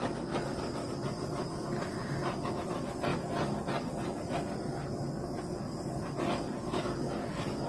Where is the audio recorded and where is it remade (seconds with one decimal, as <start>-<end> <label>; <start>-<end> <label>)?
0.0-7.7 recorded